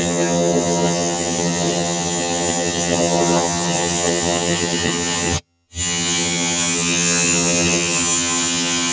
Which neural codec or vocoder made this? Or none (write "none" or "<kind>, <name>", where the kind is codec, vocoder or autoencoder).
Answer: vocoder, HiFi-GAN